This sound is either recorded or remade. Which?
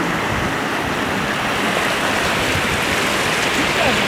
recorded